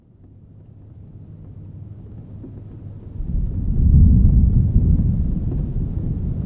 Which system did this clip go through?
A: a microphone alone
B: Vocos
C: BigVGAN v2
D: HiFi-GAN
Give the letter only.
A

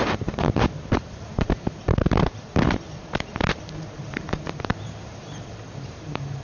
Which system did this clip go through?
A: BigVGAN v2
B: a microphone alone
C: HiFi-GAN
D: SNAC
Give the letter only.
A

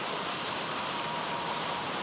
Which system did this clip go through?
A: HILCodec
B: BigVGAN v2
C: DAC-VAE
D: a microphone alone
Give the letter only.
B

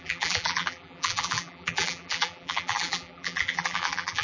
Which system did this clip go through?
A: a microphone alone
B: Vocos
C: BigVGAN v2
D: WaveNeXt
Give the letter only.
C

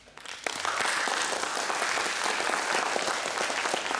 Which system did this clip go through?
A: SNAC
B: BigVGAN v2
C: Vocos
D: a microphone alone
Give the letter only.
D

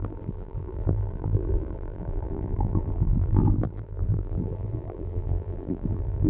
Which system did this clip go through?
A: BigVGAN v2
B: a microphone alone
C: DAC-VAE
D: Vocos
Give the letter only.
A